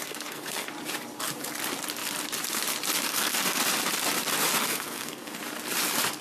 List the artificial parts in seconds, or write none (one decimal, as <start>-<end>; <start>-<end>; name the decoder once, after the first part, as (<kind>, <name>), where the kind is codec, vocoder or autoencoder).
0.0-0.7 (codec, SNAC); 3.1-3.6; 4.6-5.4